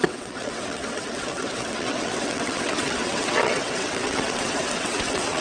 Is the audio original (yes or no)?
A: no